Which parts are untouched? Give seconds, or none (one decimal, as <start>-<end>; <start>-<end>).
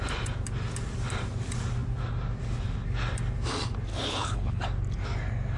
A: 0.0-3.9; 4.6-5.6